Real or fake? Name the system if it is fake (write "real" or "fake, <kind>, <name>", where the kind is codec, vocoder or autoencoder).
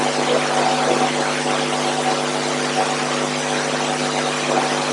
real